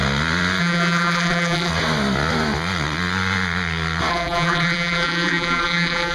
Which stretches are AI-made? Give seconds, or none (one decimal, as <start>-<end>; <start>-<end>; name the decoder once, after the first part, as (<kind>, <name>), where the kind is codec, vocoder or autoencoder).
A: 0.6-1.7 (vocoder, BigVGAN v2); 4.1-6.1